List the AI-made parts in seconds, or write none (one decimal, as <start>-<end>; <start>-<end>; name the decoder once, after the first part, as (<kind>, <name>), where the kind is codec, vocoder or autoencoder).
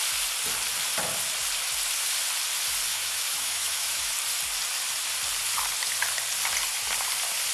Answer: 2.9-4.1 (autoencoder, DAC-VAE)